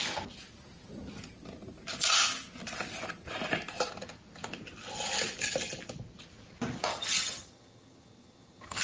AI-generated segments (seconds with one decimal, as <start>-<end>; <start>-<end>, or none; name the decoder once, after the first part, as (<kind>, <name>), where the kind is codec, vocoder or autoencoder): 6.9-8.8 (vocoder, HiFi-GAN)